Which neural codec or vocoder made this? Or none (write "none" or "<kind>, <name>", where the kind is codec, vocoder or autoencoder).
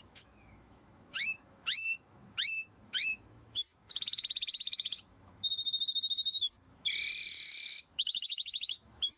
autoencoder, DAC-VAE